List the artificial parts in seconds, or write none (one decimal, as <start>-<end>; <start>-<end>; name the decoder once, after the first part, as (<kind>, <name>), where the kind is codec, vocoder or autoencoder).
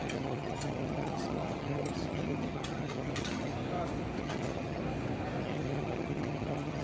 0.0-3.5 (vocoder, HiFi-GAN); 4.2-4.8; 5.4-6.8